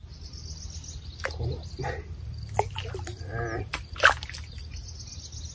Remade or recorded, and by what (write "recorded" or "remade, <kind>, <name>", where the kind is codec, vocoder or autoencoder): recorded